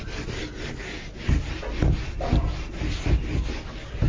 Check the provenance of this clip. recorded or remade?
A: recorded